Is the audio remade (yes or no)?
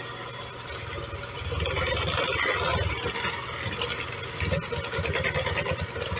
no